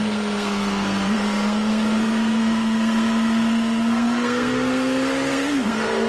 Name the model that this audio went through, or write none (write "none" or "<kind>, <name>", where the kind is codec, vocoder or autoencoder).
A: codec, SNAC